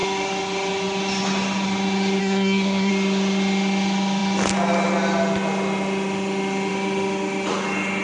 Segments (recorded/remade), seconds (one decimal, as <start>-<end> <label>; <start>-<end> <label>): 0.0-2.2 recorded; 2.2-2.9 remade; 2.9-8.0 recorded